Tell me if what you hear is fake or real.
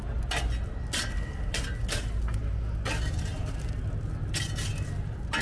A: real